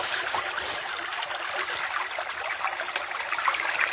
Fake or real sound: real